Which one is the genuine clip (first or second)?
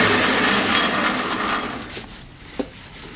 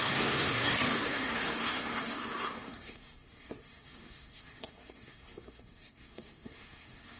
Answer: first